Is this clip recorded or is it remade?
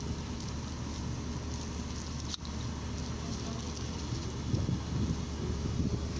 recorded